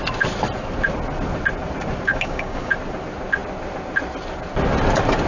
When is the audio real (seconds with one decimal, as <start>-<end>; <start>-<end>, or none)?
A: 0.0-2.1; 2.7-5.3